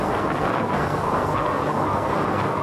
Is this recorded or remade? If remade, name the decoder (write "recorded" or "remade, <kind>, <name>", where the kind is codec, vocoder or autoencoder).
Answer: remade, codec, SNAC